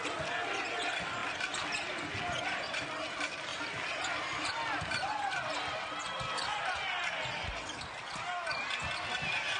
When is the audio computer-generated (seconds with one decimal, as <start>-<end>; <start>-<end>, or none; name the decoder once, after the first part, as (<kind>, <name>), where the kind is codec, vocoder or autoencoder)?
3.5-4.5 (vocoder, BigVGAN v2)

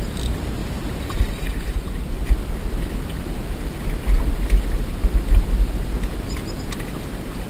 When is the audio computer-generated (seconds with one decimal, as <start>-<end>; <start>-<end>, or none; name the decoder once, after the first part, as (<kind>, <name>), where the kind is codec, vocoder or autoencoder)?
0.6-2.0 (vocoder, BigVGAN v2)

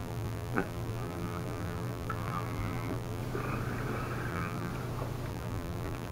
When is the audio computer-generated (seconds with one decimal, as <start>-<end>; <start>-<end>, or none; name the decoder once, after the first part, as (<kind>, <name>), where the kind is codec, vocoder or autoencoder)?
0.0-3.2 (vocoder, BigVGAN v2); 4.3-4.7; 5.3-6.1

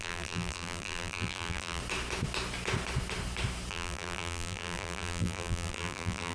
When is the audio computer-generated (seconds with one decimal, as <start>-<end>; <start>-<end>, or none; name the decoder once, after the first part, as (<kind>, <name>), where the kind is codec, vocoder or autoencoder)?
0.0-1.8 (vocoder, BigVGAN v2); 3.7-6.3

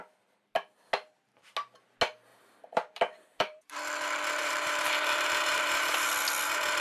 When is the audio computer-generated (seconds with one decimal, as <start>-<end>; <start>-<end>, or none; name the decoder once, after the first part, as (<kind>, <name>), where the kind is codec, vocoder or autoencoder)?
2.3-3.6 (vocoder, BigVGAN v2); 4.4-6.1

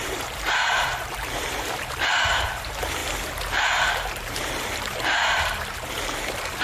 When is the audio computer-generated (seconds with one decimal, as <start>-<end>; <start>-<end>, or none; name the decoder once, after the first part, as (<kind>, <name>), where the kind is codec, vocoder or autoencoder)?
0.0-3.0 (vocoder, BigVGAN v2); 3.5-6.6

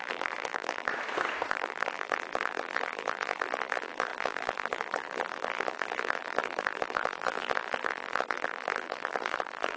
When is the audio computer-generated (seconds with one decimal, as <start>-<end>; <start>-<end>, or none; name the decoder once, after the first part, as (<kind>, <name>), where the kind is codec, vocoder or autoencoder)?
0.0-0.9 (vocoder, BigVGAN v2); 1.5-9.8